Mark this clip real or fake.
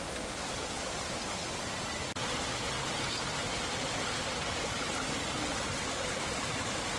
real